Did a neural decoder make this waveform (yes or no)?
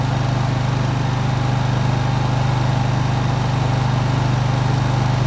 no